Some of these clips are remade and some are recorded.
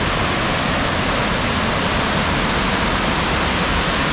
recorded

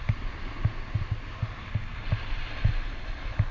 recorded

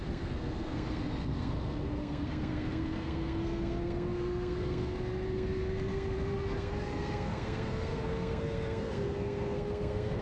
remade